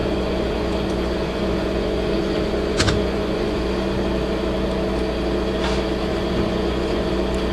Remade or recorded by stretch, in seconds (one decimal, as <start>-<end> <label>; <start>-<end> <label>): 0.0-3.6 remade; 3.6-6.1 recorded; 6.1-7.1 remade; 7.1-7.5 recorded

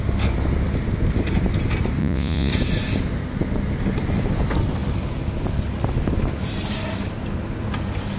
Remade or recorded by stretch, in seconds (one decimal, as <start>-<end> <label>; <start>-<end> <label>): 0.0-2.0 recorded; 2.0-2.5 remade; 2.5-8.2 recorded

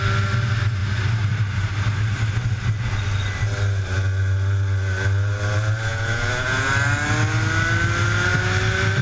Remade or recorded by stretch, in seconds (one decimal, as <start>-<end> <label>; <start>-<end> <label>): 0.0-5.9 recorded; 5.9-6.7 remade; 6.7-9.0 recorded

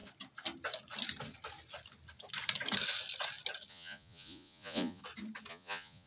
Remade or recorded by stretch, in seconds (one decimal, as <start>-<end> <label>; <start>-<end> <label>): 0.0-3.7 recorded; 3.7-5.0 remade; 5.0-5.5 recorded; 5.5-6.1 remade

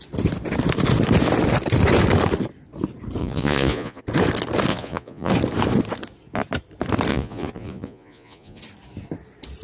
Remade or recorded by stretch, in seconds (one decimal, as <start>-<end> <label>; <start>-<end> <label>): 0.0-3.2 recorded; 3.2-4.0 remade; 4.0-4.7 recorded; 4.7-5.3 remade; 5.3-7.1 recorded; 7.1-8.6 remade; 8.6-9.6 recorded

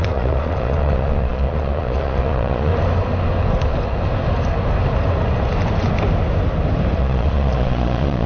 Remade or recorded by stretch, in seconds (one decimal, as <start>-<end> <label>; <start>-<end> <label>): 0.0-2.7 remade; 2.7-7.0 recorded; 7.0-8.3 remade